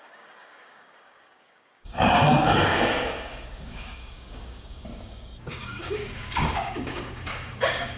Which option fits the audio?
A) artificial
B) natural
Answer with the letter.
A